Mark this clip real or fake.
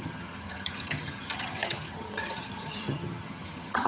fake